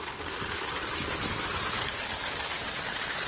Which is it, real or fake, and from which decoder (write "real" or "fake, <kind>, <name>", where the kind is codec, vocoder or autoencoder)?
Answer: real